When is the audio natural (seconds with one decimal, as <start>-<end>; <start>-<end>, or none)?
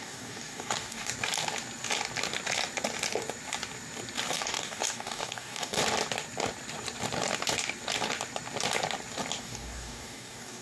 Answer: 1.1-4.3; 5.8-9.4